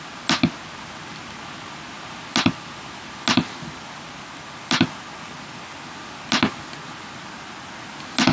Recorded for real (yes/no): yes